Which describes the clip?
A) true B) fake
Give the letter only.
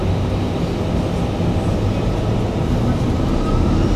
A